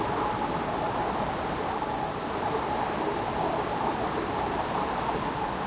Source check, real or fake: real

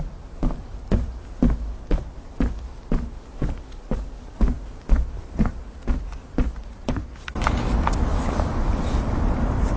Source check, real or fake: real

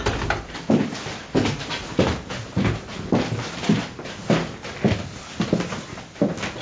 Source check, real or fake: real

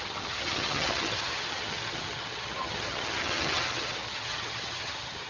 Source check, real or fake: fake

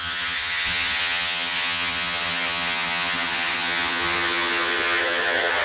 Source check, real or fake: fake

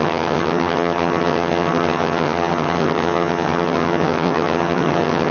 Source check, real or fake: fake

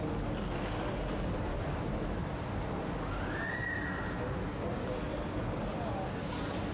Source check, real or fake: real